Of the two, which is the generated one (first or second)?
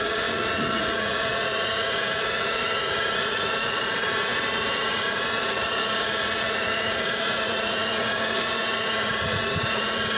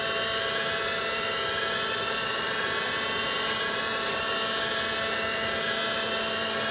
first